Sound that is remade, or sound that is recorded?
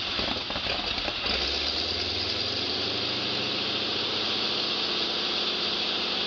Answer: recorded